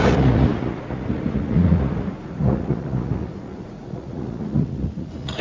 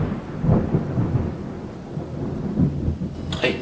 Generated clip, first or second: first